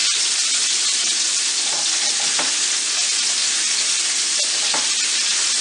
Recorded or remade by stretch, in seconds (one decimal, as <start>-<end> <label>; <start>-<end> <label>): 0.0-5.6 recorded